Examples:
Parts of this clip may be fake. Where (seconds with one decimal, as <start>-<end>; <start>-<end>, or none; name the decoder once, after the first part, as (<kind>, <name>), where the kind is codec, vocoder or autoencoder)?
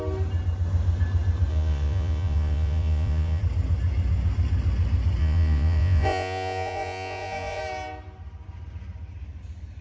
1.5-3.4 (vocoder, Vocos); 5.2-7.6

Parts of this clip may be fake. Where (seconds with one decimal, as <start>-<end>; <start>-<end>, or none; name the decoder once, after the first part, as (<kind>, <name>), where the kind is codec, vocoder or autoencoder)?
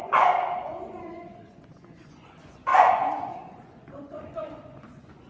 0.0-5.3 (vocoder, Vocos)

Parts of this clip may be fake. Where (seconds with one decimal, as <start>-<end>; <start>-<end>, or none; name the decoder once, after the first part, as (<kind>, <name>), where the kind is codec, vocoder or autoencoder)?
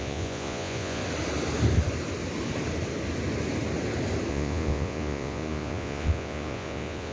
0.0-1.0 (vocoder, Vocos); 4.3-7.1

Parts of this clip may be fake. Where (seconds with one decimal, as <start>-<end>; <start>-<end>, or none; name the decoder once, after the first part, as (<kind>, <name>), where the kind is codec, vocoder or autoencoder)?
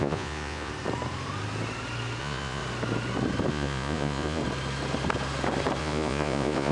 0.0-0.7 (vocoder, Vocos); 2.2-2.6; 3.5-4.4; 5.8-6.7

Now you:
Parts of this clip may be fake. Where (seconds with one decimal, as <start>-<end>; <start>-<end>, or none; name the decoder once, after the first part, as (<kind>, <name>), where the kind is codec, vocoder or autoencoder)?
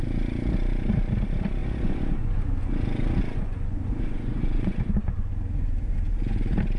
1.6-5.3 (vocoder, Vocos)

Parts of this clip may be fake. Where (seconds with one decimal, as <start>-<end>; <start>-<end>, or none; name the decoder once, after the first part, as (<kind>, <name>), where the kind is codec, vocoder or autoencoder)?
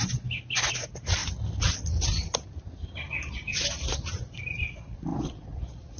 5.1-6.0 (vocoder, Vocos)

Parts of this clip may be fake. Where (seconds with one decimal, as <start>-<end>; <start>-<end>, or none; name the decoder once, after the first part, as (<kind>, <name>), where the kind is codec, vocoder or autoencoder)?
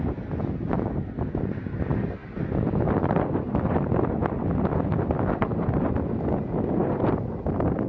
none